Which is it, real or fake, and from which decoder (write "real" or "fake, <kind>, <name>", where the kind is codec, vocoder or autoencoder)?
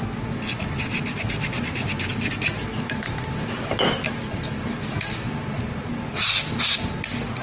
real